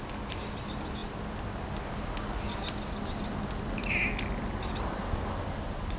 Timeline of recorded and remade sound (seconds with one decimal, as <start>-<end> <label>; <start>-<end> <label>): 0.0-6.0 recorded